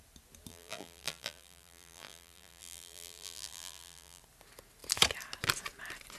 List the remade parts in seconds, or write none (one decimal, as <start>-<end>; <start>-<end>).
0.5-4.2